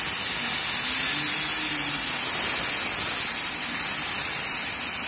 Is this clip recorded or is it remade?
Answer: recorded